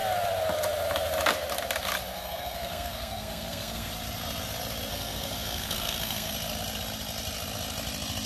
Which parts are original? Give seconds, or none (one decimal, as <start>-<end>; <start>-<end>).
0.0-2.1; 3.9-4.9; 6.3-8.3